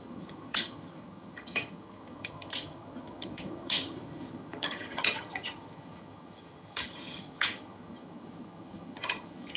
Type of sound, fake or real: fake